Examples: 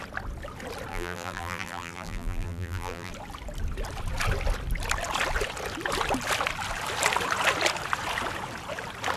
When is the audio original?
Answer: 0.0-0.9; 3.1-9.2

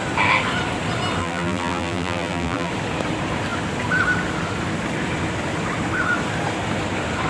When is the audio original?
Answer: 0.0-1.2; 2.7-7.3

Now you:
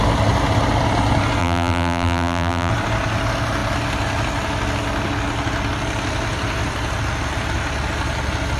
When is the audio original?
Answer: 0.0-1.4; 2.7-8.6

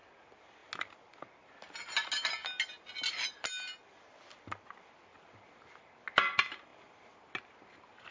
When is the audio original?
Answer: 0.0-8.1